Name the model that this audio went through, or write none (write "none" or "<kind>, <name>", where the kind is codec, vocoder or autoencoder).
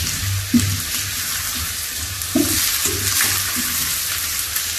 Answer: none